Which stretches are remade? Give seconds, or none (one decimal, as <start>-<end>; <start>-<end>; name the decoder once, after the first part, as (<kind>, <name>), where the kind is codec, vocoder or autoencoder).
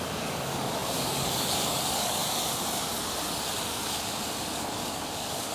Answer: 0.0-2.2 (codec, DAC); 3.7-5.5